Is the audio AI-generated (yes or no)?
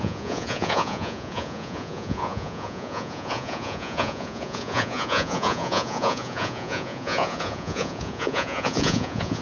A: yes